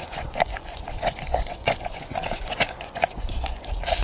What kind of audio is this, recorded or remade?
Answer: remade